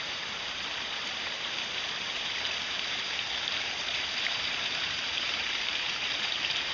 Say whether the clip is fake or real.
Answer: fake